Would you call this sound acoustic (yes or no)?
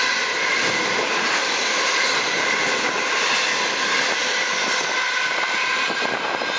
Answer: yes